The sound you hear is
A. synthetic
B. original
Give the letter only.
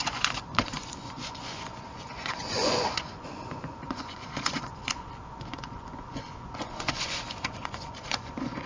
A